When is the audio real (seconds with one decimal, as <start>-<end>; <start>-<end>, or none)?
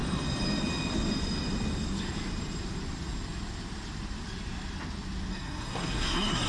0.0-5.3